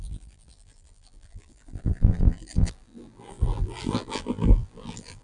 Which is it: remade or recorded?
remade